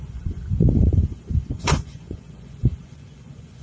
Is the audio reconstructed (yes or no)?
yes